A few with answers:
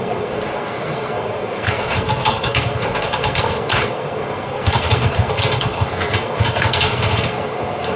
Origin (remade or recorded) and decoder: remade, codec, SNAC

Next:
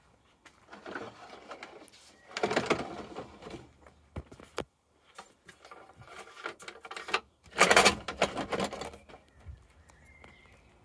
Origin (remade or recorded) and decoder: recorded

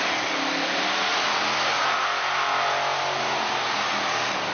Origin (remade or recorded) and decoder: recorded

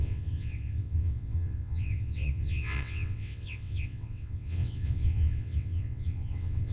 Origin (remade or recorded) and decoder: remade, vocoder, WaveNeXt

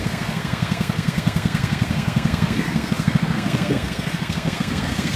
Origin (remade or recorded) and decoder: remade, codec, SNAC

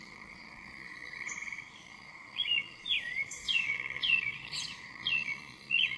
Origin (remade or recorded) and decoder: remade, vocoder, Vocos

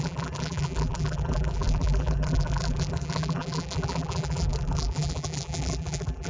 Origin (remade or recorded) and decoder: remade, vocoder, BigVGAN v2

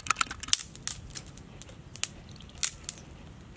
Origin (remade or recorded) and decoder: recorded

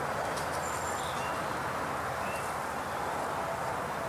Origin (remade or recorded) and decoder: recorded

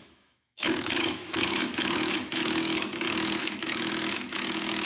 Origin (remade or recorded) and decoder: remade, autoencoder, DAC-VAE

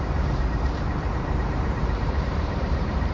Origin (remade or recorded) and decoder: remade, vocoder, BigVGAN v2